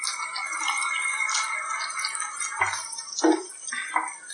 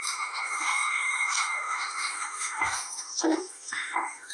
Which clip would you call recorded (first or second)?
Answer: first